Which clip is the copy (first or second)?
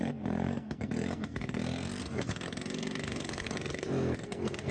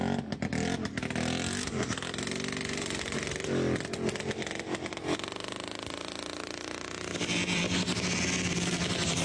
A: first